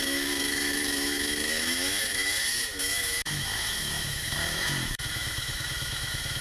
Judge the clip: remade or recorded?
remade